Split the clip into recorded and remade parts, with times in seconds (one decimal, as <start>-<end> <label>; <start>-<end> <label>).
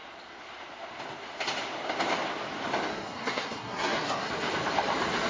0.0-2.9 recorded; 2.9-4.3 remade; 4.3-5.3 recorded